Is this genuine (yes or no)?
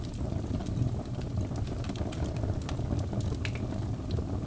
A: yes